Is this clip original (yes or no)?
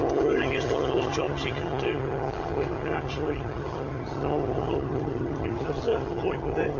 no